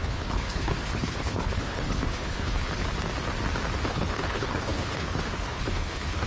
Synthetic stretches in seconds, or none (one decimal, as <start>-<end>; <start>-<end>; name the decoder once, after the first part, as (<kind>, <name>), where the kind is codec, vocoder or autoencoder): 0.0-2.8 (codec, HILCodec); 3.9-6.3

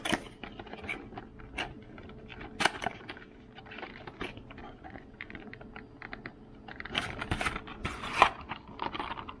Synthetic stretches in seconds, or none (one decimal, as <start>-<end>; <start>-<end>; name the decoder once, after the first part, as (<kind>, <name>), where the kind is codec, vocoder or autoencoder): 4.6-5.6 (vocoder, Vocos); 7.7-8.5

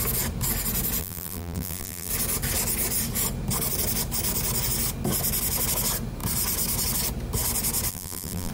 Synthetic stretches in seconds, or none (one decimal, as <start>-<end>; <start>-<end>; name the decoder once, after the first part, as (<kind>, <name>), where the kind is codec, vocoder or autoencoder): 1.0-2.1 (vocoder, BigVGAN v2); 7.9-8.5

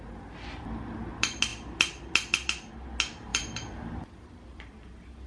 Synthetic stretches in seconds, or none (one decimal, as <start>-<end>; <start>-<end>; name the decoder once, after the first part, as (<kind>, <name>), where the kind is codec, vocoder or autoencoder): 3.3-5.3 (vocoder, BigVGAN v2)

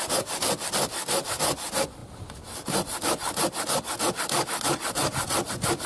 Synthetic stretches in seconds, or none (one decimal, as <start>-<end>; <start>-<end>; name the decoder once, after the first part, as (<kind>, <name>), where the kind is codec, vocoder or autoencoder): none

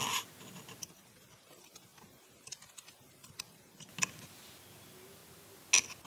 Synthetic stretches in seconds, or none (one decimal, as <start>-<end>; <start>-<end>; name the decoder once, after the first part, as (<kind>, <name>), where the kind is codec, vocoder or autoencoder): none

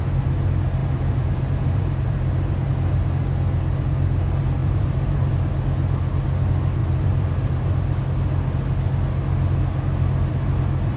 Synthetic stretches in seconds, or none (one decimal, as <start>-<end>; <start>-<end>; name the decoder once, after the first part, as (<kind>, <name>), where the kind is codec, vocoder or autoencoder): 0.8-2.7 (vocoder, BigVGAN v2); 4.6-5.3; 6.8-8.0